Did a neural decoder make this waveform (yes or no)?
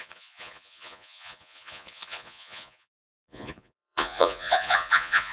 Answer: yes